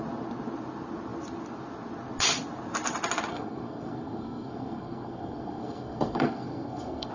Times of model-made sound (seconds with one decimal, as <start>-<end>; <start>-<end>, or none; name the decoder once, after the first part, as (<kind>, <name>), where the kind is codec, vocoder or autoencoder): 3.3-7.1 (codec, SNAC)